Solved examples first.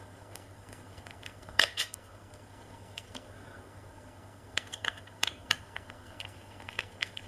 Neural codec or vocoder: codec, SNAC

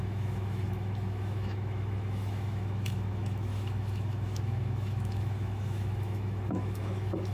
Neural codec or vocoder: autoencoder, DAC-VAE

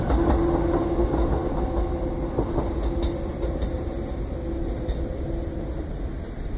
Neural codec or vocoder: none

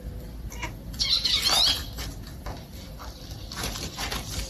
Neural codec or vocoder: none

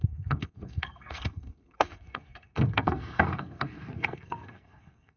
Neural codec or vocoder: codec, SNAC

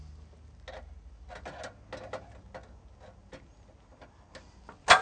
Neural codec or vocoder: none